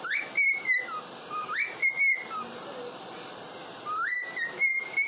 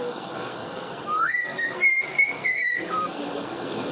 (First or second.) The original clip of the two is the first